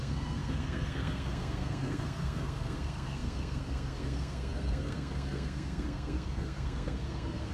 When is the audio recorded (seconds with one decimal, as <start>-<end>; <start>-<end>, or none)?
none